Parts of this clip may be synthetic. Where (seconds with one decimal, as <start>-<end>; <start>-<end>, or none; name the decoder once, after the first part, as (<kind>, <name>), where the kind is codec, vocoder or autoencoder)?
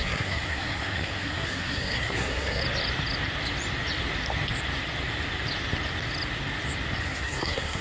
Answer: 0.0-2.6 (codec, SNAC); 7.0-7.8